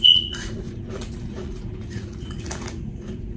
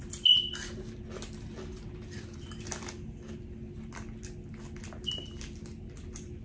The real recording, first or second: second